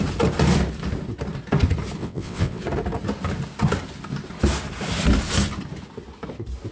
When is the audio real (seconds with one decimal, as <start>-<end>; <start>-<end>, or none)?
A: 0.0-2.0; 2.6-6.7